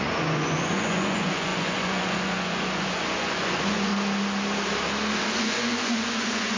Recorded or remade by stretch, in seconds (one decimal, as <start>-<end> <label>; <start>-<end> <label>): 0.0-3.9 remade; 3.9-5.4 recorded; 5.4-6.6 remade